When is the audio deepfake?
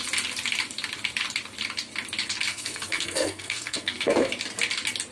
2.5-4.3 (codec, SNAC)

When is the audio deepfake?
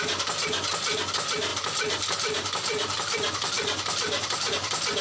1.5-4.5 (vocoder, BigVGAN v2)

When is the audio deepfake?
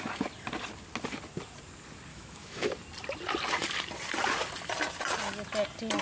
2.1-2.7 (autoencoder, DAC-VAE)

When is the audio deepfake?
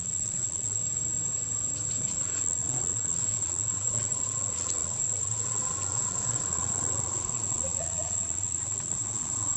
0.0-0.8 (vocoder, Vocos); 2.0-9.6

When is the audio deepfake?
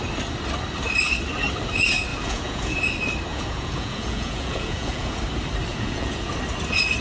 2.1-2.8 (vocoder, Vocos); 3.3-5.2; 5.7-6.3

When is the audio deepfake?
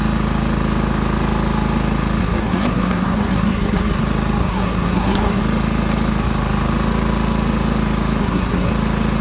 2.2-4.0 (codec, SNAC); 4.4-5.4; 8.2-8.7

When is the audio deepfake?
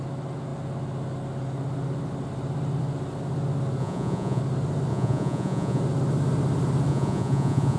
3.8-4.4 (vocoder, Vocos); 4.9-5.8; 6.9-7.8